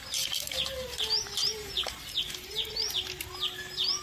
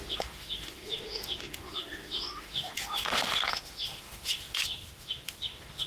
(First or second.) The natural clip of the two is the first